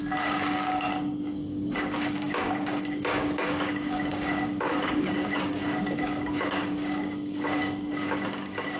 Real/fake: fake